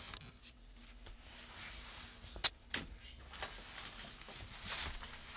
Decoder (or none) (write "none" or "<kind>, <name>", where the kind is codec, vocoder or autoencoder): none